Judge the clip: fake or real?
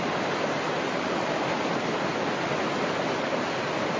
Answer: real